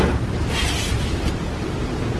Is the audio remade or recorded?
recorded